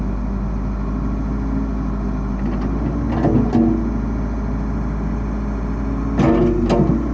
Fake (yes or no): no